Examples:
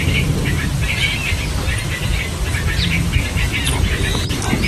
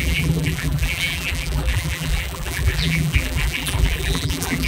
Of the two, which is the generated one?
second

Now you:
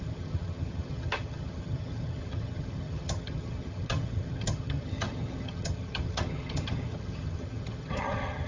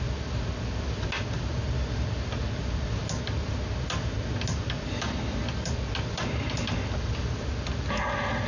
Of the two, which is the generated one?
first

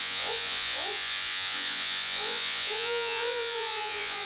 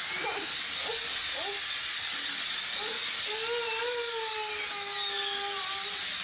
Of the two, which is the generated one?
first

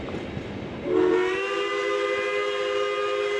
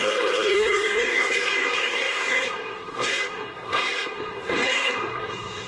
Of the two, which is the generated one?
second